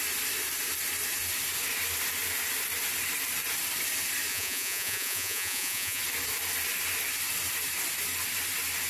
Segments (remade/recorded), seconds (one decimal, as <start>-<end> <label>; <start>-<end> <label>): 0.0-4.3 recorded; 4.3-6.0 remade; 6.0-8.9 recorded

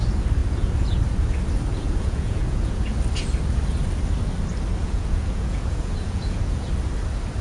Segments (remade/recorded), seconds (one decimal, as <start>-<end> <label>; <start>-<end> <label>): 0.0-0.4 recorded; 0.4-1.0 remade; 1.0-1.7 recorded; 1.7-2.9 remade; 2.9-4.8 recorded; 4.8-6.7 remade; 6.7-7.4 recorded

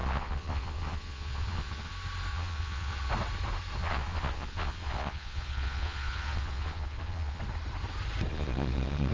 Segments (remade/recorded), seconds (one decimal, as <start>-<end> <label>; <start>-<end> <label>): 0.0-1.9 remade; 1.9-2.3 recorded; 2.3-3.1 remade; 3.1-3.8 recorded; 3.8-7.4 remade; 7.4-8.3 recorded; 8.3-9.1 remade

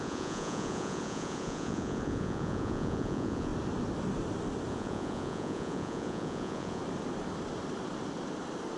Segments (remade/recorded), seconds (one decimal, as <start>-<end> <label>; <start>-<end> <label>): 0.0-3.5 remade; 3.5-4.7 recorded; 4.7-6.8 remade; 6.8-8.8 recorded